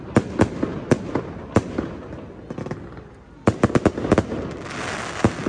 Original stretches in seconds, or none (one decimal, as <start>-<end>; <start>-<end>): 0.0-5.5